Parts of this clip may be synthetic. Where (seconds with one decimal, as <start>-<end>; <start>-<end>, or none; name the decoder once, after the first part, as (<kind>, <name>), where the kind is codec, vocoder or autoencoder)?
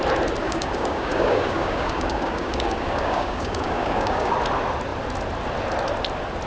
0.4-4.3 (codec, DAC)